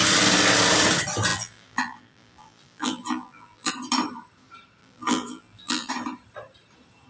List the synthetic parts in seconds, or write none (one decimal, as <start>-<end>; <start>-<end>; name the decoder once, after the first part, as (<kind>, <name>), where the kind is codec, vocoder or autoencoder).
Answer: 1.3-3.7 (vocoder, BigVGAN v2); 4.8-5.9